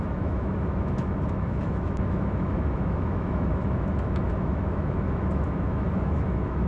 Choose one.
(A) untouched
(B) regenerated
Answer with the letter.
B